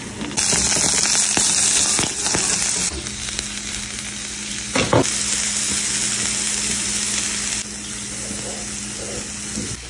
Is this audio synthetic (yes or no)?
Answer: no